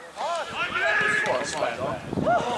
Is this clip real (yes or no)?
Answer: yes